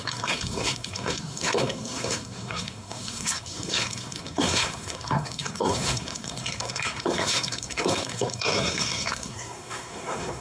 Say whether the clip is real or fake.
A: fake